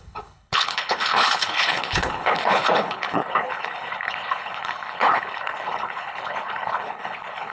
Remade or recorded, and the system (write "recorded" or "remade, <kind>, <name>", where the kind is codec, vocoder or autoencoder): remade, codec, HILCodec